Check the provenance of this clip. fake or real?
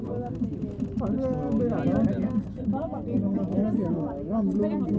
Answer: real